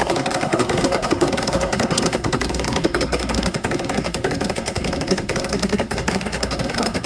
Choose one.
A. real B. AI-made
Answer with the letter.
B